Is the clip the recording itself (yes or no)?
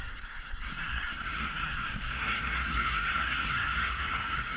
no